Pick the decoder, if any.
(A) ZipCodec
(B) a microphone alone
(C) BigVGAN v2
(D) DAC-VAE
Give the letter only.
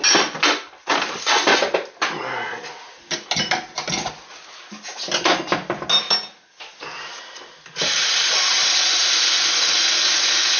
B